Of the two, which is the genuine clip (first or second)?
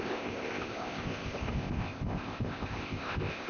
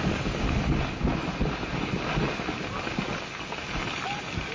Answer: second